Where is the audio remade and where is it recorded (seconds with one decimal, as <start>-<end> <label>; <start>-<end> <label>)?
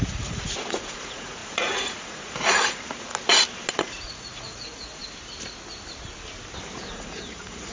0.0-3.1 remade; 3.1-3.7 recorded; 3.7-5.0 remade; 5.0-6.9 recorded; 6.9-7.7 remade